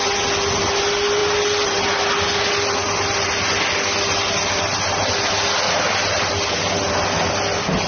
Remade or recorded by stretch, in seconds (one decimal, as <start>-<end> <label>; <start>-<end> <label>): 0.0-7.9 recorded